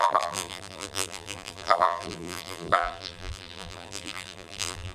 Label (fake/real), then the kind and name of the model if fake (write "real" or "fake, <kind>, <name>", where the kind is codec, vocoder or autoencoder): fake, vocoder, BigVGAN v2